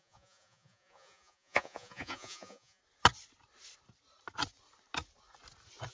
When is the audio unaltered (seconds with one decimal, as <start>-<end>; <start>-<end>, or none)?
2.8-5.9